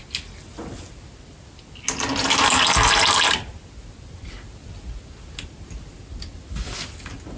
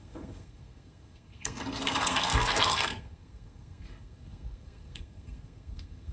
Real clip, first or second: first